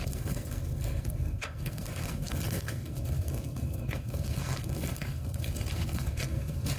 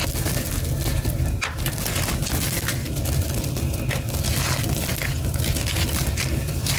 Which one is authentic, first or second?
second